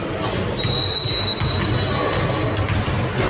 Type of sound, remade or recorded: recorded